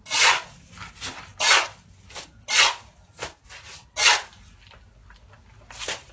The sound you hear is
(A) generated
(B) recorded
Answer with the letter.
B